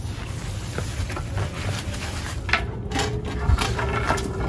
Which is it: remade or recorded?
recorded